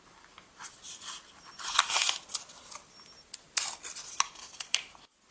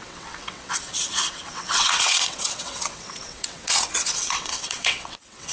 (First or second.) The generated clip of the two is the second